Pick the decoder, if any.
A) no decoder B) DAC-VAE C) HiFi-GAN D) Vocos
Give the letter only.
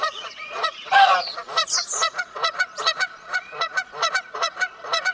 D